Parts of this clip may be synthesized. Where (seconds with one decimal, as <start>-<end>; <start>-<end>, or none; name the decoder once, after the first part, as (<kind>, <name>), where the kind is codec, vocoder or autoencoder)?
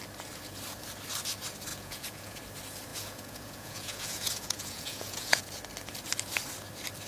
1.7-2.4 (vocoder, Vocos); 2.9-5.4